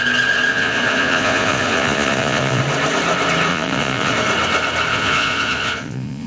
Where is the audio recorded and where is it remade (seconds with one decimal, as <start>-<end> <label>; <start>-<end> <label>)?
0.0-0.5 recorded; 0.5-2.6 remade; 2.6-3.5 recorded; 3.5-4.1 remade; 4.1-4.9 recorded; 4.9-6.3 remade